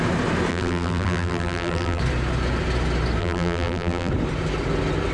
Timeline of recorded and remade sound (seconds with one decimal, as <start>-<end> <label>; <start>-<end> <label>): 0.0-0.5 recorded; 0.5-2.0 remade; 2.0-3.2 recorded; 3.2-4.1 remade; 4.1-5.1 recorded

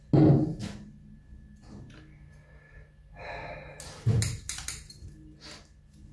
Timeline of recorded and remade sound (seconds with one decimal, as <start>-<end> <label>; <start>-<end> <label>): 0.0-6.1 recorded

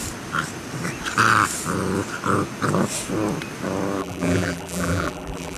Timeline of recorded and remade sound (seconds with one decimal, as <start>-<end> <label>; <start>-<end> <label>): 0.0-4.0 recorded; 4.0-5.6 remade

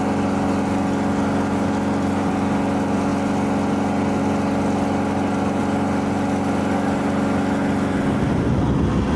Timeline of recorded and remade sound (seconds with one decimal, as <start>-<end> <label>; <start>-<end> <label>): 0.0-9.2 recorded

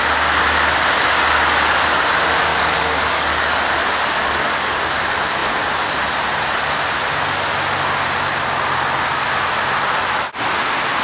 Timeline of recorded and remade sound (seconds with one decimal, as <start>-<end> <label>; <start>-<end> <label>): 0.0-2.5 recorded; 2.5-3.6 remade; 3.6-4.2 recorded; 4.2-4.8 remade; 4.8-11.0 recorded